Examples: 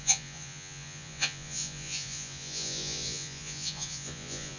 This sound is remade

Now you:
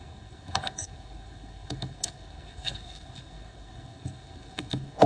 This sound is remade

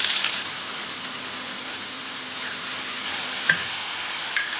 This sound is recorded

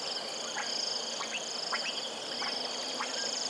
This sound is recorded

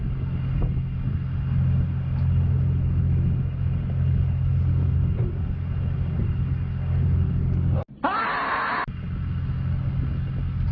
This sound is recorded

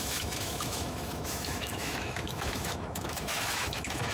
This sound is remade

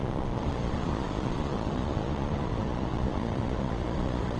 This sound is remade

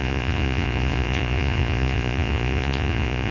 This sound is remade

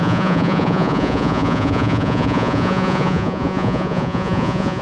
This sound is remade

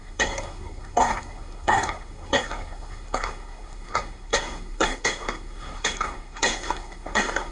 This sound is remade